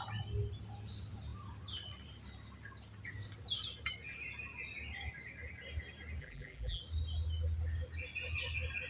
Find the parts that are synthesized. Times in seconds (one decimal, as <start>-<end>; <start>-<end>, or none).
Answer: 6.2-6.8

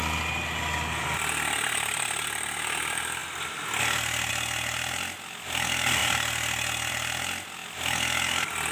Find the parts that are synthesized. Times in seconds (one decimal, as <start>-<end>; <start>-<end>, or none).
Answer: none

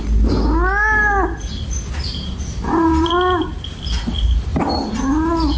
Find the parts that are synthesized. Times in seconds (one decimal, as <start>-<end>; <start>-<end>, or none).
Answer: 2.1-3.1

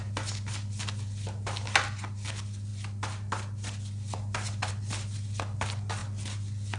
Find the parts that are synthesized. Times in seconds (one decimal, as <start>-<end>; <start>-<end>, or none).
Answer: none

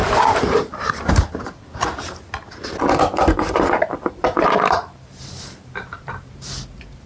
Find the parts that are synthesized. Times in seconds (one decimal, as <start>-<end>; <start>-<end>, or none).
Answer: 0.0-1.1; 3.2-7.1

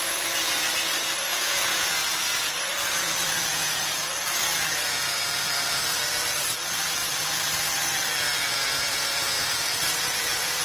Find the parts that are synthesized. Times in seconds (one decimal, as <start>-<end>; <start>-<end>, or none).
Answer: 1.3-1.9; 3.5-4.1

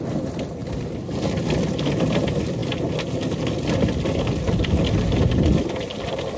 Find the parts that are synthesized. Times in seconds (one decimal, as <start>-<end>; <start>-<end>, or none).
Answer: none

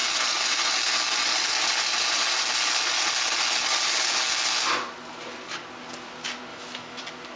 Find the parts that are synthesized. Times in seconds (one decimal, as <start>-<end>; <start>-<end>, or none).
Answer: 6.5-7.0